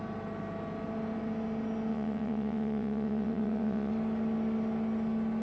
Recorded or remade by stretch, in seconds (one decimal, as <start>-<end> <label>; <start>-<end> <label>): 0.0-1.9 recorded; 1.9-3.9 remade; 3.9-5.4 recorded

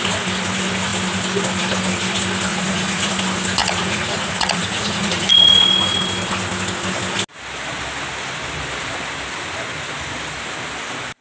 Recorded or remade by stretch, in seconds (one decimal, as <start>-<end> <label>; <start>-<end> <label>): 0.0-2.5 recorded; 2.5-3.1 remade; 3.1-3.6 recorded; 3.6-5.3 remade; 5.3-11.2 recorded

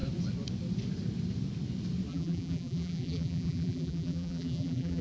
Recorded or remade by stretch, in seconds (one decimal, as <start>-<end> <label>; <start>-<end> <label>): 0.0-2.1 recorded; 2.1-5.0 remade

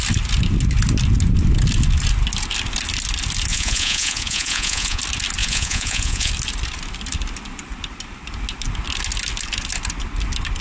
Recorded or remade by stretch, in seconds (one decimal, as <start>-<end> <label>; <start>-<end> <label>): 0.0-3.5 recorded; 3.5-5.0 remade; 5.0-5.4 recorded; 5.4-6.3 remade; 6.3-10.6 recorded

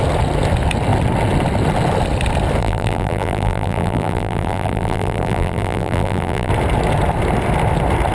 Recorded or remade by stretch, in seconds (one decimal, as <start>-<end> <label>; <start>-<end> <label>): 0.0-2.6 recorded; 2.6-6.5 remade; 6.5-8.1 recorded

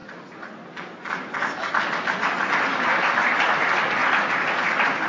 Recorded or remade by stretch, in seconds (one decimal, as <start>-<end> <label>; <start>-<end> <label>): 0.0-5.1 recorded

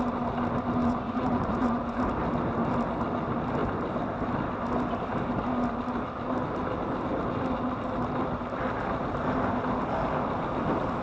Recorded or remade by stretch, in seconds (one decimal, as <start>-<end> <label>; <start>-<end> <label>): 0.0-0.8 recorded; 0.8-2.0 remade; 2.0-11.0 recorded